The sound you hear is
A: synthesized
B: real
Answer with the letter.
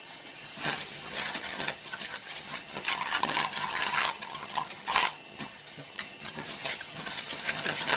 A